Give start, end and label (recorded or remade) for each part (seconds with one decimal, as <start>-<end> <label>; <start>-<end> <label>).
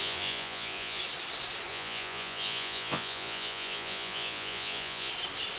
0.0-1.0 remade; 1.0-1.7 recorded; 1.7-5.1 remade; 5.1-5.6 recorded